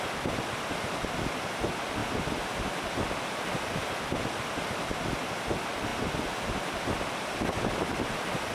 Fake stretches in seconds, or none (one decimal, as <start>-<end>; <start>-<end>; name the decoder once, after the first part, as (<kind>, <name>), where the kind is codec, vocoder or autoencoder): none